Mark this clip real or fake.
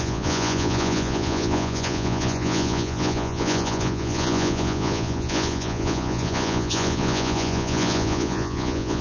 fake